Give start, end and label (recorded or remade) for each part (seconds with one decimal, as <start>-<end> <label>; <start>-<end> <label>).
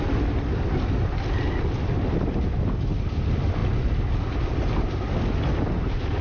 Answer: 0.0-6.2 recorded